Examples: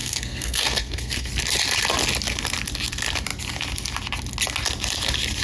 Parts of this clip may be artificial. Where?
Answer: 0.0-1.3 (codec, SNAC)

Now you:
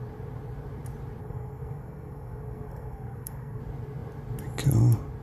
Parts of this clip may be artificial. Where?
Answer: 1.2-3.6 (codec, SNAC)

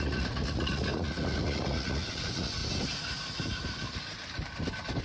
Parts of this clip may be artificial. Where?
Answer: 0.0-2.6 (vocoder, Vocos)